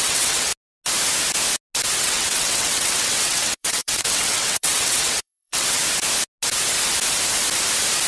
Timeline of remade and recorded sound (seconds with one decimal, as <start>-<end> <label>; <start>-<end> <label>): 0.0-0.5 remade; 0.5-2.0 recorded; 2.0-5.8 remade; 5.8-8.1 recorded